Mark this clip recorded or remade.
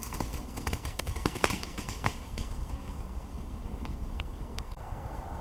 remade